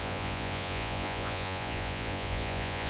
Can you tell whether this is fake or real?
fake